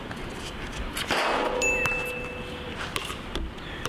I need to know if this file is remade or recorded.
recorded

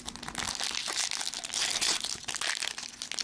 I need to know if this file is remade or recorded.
recorded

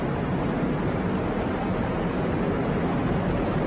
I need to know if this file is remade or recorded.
remade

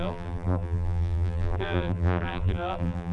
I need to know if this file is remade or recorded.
remade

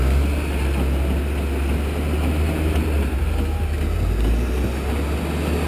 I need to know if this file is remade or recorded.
recorded